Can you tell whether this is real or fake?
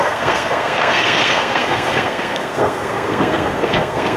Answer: fake